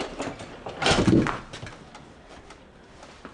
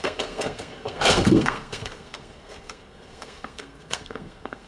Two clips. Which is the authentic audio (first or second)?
first